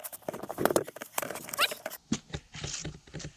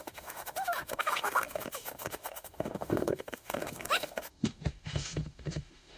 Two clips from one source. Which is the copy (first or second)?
second